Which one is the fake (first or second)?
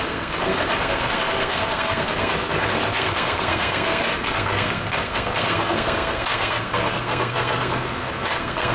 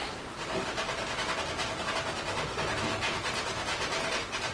first